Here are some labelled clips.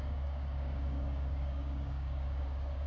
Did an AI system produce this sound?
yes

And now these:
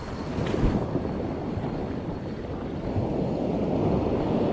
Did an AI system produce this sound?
no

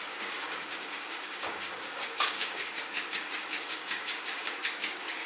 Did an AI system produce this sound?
yes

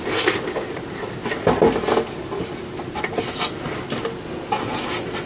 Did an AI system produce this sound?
no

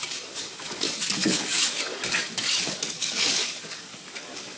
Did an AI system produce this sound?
yes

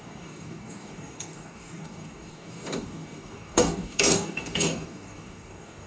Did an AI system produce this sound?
yes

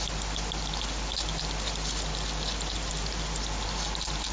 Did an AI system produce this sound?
no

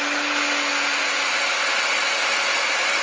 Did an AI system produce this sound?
no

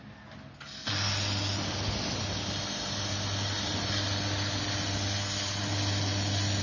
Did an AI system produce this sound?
no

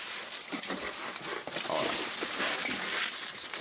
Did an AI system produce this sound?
no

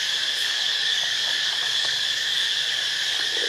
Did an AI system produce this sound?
yes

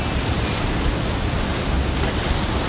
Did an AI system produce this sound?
no